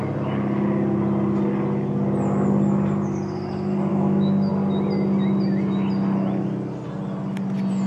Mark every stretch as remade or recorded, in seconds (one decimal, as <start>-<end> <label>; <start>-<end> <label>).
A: 0.0-3.9 recorded; 3.9-4.5 remade; 4.5-7.9 recorded